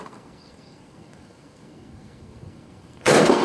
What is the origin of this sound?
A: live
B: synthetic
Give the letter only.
B